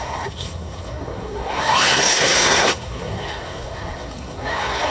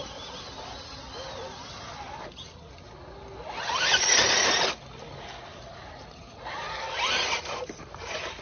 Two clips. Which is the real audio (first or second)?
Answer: second